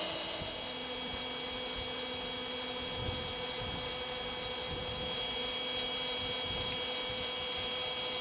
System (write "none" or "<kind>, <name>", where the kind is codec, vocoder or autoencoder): none